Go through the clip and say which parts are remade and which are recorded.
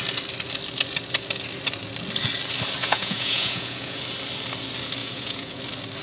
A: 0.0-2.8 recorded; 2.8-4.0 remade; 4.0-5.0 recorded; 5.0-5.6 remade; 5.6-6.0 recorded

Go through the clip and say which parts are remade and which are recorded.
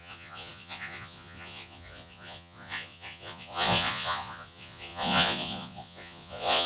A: 0.0-6.7 remade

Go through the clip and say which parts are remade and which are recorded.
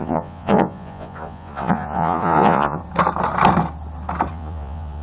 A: 0.0-2.8 remade; 2.8-4.3 recorded; 4.3-5.0 remade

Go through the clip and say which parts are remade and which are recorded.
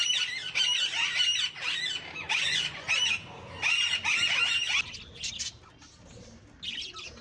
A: 0.0-2.4 recorded; 2.4-2.9 remade; 2.9-7.2 recorded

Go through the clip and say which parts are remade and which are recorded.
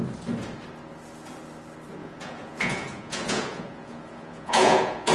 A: 0.0-2.0 recorded; 2.0-5.1 remade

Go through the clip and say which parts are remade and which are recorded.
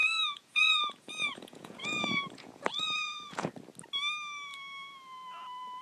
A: 0.0-3.5 remade; 3.5-5.8 recorded